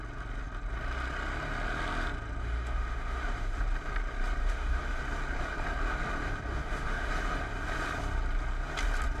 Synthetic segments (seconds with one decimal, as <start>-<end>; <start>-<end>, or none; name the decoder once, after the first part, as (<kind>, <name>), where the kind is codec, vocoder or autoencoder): 2.4-3.6 (autoencoder, DAC-VAE); 4.4-5.0; 6.5-7.1